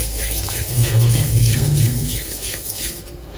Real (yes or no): no